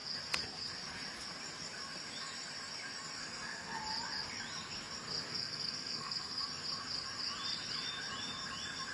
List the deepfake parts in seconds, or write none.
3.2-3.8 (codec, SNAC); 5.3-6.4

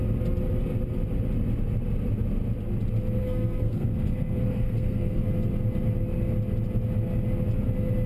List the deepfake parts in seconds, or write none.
3.2-5.2 (codec, SNAC)

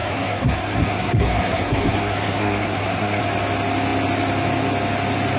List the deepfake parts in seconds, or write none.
0.0-3.2 (codec, SNAC)